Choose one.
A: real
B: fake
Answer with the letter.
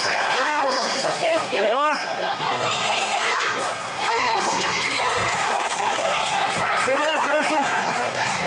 B